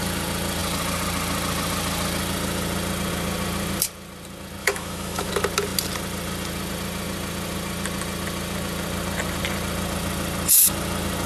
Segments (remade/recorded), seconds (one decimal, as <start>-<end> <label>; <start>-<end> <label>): 0.0-4.6 recorded; 4.6-5.3 remade; 5.3-11.3 recorded